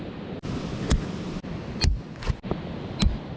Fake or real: real